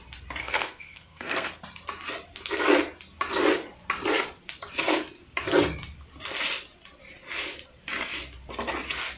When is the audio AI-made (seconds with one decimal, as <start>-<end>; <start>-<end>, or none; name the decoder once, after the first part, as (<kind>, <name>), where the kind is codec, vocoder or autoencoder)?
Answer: 0.4-1.6 (codec, SNAC)